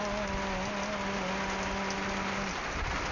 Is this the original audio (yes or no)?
yes